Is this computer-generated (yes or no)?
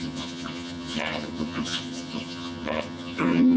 yes